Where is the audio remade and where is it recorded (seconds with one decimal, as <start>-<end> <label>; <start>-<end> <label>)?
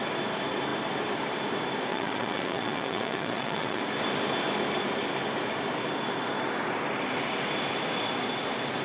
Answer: 0.0-1.9 recorded; 1.9-3.8 remade; 3.8-8.8 recorded